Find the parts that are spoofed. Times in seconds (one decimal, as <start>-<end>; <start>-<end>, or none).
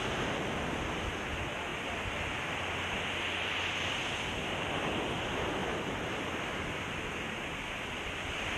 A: 5.6-6.1